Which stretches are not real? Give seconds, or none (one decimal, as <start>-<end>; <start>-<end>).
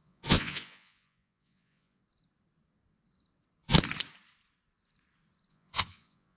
0.0-2.0; 5.5-6.4